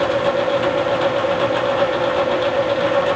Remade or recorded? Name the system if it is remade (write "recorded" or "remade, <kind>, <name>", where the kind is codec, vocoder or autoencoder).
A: recorded